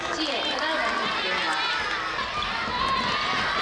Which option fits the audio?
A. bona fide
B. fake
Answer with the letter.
A